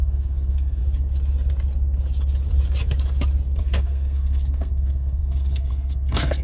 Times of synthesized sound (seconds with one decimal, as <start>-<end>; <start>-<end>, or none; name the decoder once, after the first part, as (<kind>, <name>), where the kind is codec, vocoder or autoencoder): 0.0-0.8 (codec, SNAC); 3.6-6.4